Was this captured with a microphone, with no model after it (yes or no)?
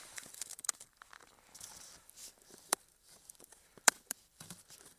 no